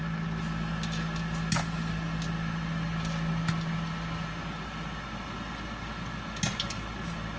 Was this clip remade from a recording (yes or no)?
no